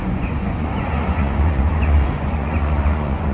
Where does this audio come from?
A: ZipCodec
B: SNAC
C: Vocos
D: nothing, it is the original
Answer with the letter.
C